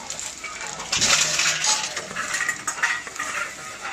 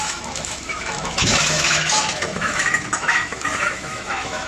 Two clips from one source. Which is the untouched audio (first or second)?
first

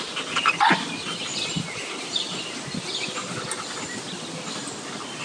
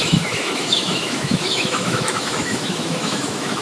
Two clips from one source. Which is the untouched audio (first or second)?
first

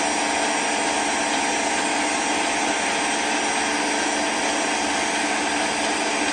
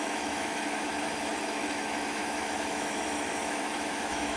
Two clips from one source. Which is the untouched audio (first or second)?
first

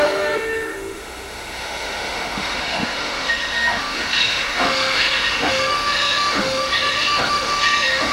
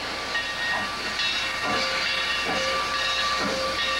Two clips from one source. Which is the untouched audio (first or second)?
second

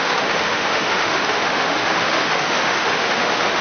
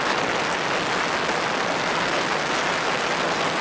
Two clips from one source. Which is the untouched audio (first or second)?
second